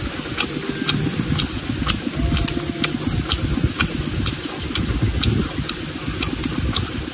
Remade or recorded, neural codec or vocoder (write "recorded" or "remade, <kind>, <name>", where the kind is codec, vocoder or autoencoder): recorded